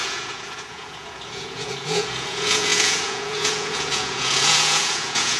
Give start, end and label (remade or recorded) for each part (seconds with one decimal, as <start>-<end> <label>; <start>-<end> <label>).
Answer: 0.0-5.4 remade